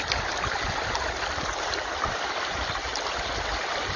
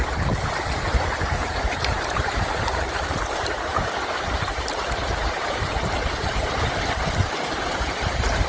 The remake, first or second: second